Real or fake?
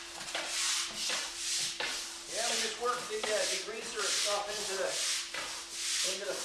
real